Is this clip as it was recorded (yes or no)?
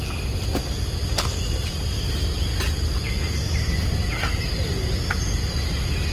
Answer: yes